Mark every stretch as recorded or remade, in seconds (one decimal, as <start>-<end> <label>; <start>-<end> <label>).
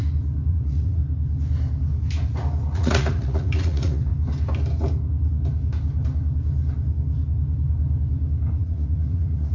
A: 0.0-0.5 recorded; 0.5-1.0 remade; 1.0-2.7 recorded; 2.7-4.1 remade; 4.1-8.6 recorded; 8.6-9.5 remade